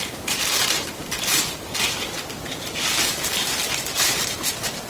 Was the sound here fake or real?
real